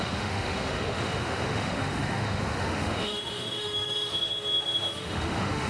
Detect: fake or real fake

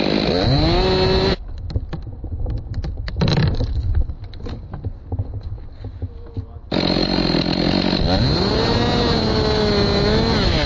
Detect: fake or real real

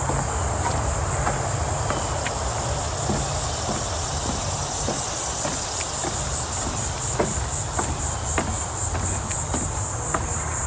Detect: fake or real real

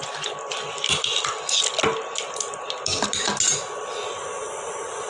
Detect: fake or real real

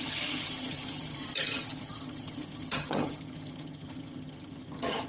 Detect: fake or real fake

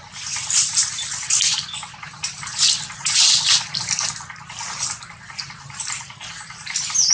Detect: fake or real real